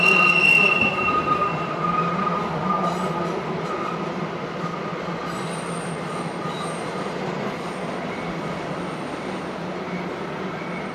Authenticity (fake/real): real